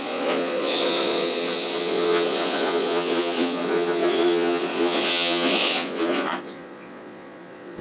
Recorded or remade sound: remade